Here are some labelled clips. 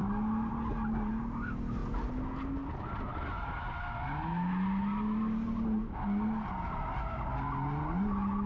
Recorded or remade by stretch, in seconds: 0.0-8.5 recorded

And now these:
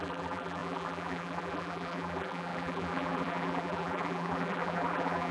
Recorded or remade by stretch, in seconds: 0.0-5.3 remade

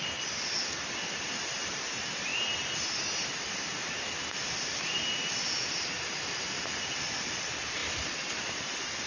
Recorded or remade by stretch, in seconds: 0.0-2.3 remade; 2.3-4.3 recorded; 4.3-9.1 remade

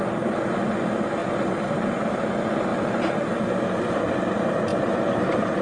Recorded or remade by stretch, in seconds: 0.0-1.2 recorded; 1.2-2.2 remade; 2.2-2.7 recorded; 2.7-4.0 remade; 4.0-4.7 recorded; 4.7-5.6 remade

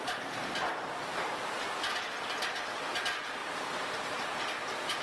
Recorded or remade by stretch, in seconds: 0.0-3.4 recorded; 3.4-4.3 remade; 4.3-5.0 recorded

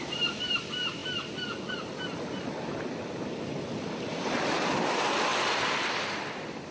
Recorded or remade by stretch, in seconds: 0.0-6.7 remade

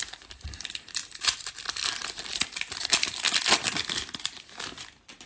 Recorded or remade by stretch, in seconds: 0.0-5.3 recorded

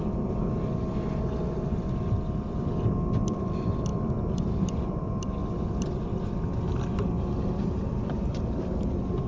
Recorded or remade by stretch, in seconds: 0.0-0.4 remade; 0.4-3.3 recorded; 3.3-3.9 remade; 3.9-4.4 recorded; 4.4-5.4 remade; 5.4-7.0 recorded; 7.0-9.3 remade